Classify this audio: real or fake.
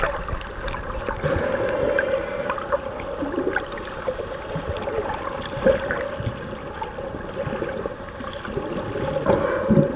real